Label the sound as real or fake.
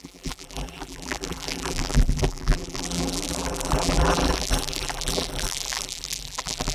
fake